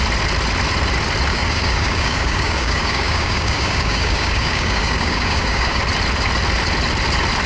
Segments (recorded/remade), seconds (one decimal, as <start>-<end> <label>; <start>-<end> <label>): 0.0-1.3 recorded; 1.3-5.8 remade; 5.8-7.5 recorded